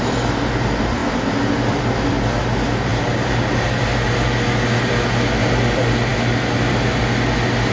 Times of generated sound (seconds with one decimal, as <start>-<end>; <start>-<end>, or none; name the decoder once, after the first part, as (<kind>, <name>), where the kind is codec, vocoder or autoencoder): none